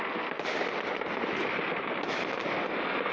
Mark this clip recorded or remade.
recorded